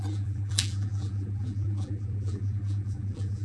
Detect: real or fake fake